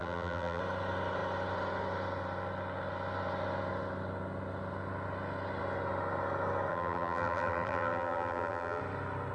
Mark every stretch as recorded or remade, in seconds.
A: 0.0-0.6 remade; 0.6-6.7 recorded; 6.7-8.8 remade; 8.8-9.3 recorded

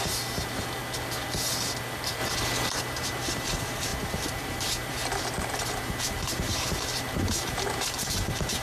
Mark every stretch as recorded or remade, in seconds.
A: 0.0-0.8 remade; 0.8-1.8 recorded; 1.8-2.2 remade; 2.2-2.7 recorded; 2.7-8.6 remade

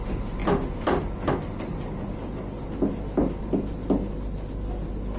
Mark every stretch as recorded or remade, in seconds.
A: 0.0-5.2 recorded

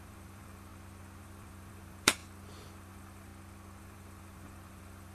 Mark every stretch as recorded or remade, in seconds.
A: 0.0-0.7 remade; 0.7-1.2 recorded; 1.2-3.3 remade; 3.3-3.8 recorded; 3.8-5.1 remade